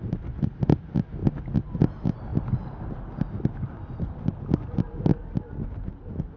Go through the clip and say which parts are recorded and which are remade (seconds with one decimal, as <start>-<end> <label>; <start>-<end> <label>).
0.0-2.3 recorded; 2.3-4.4 remade; 4.4-6.4 recorded